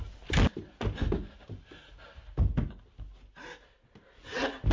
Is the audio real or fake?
real